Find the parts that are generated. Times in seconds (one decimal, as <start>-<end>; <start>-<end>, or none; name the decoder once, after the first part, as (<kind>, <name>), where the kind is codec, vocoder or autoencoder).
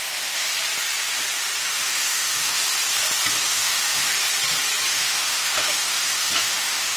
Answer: 0.0-0.5 (autoencoder, DAC-VAE); 1.6-2.6; 3.3-4.2; 4.9-7.0